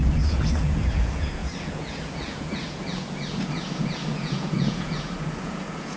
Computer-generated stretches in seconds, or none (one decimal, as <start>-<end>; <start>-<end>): 0.0-6.0